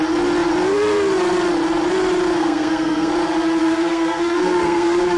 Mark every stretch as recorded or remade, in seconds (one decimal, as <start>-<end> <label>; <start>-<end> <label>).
0.0-2.4 recorded; 2.4-3.1 remade; 3.1-3.6 recorded; 3.6-5.2 remade